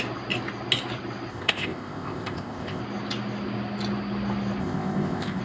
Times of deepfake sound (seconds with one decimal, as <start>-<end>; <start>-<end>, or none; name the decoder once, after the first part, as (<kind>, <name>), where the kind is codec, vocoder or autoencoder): 1.3-2.8 (codec, ZipCodec); 4.6-5.4